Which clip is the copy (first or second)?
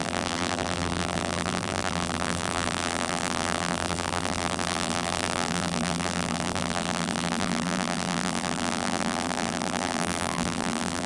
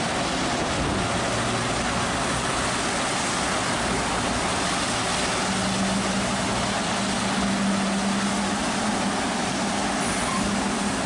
first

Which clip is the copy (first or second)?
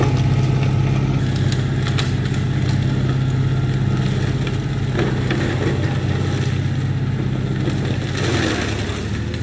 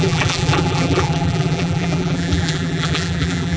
second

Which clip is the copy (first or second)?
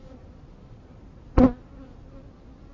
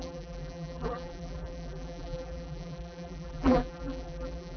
second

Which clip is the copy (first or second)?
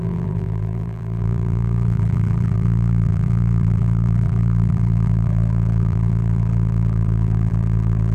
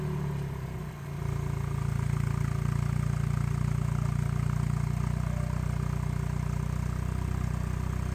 first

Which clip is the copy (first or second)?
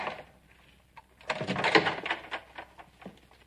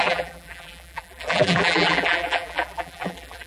second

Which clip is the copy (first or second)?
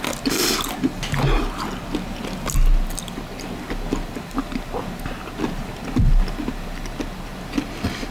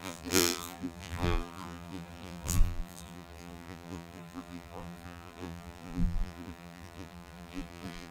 second